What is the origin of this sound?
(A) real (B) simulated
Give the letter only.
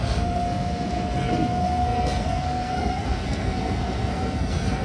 B